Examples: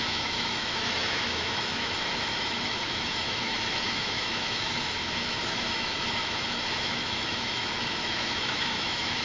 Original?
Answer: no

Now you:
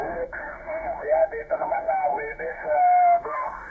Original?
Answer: no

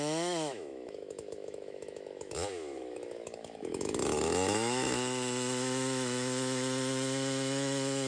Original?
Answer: no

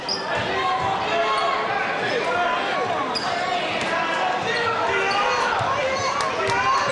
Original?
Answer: yes